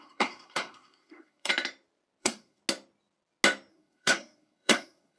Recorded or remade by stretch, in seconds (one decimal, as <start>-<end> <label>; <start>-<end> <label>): 0.0-1.5 remade; 1.5-2.2 recorded; 2.2-2.6 remade; 2.6-3.7 recorded; 3.7-5.2 remade